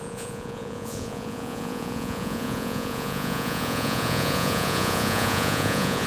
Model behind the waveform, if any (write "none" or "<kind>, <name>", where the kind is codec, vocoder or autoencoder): vocoder, Vocos